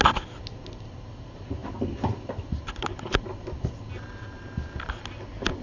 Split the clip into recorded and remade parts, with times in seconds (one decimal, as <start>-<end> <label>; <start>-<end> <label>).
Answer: 0.0-5.6 recorded